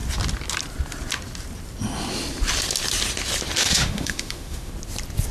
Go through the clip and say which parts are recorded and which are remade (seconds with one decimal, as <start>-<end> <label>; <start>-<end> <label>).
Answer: 0.0-3.6 recorded; 3.6-4.7 remade; 4.7-5.3 recorded